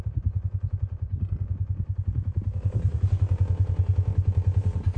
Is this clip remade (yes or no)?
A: no